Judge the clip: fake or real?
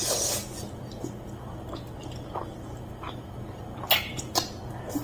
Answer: real